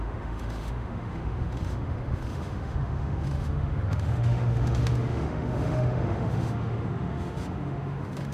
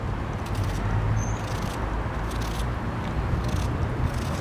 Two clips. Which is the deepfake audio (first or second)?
first